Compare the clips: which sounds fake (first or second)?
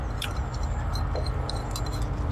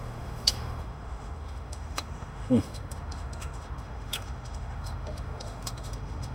second